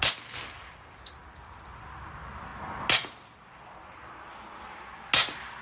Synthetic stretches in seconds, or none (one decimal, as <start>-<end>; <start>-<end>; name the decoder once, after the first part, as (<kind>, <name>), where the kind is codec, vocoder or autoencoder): none